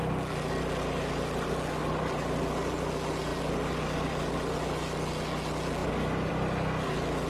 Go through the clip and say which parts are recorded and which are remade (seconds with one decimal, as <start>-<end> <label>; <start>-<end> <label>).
0.0-5.8 recorded; 5.8-6.3 remade; 6.3-7.3 recorded